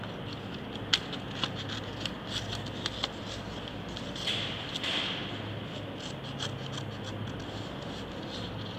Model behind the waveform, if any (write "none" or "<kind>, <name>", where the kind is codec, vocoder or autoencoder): none